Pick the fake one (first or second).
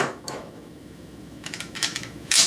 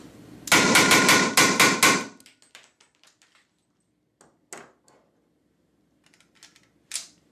first